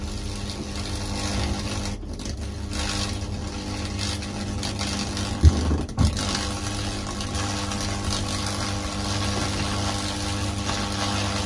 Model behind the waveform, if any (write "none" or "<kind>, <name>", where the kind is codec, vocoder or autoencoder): none